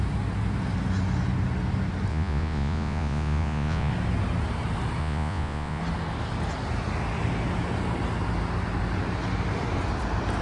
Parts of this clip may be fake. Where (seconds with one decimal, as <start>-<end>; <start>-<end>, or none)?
2.1-3.9; 5.0-5.8